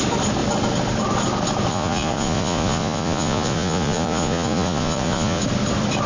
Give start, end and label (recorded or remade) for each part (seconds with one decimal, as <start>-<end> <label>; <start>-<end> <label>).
0.0-1.7 recorded; 1.7-5.4 remade; 5.4-6.1 recorded